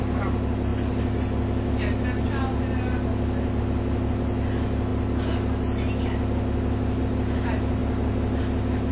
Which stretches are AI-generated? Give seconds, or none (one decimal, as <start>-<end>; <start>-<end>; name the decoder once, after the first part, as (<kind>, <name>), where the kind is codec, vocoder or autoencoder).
none